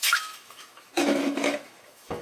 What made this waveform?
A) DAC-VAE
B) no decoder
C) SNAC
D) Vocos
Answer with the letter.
A